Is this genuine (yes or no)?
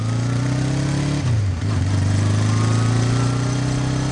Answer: yes